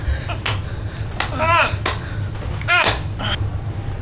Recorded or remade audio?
recorded